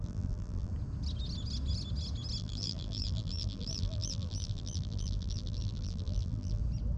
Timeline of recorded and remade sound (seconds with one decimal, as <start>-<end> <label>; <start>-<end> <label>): 0.0-0.7 remade; 0.7-2.4 recorded; 2.4-6.6 remade; 6.6-7.0 recorded